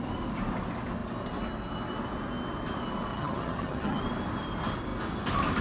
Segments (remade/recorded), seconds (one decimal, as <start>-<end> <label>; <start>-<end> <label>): 0.0-3.1 recorded; 3.1-4.0 remade; 4.0-5.6 recorded

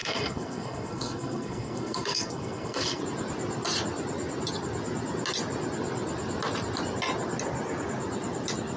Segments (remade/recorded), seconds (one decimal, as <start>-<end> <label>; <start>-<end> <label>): 0.0-3.0 remade; 3.0-8.8 recorded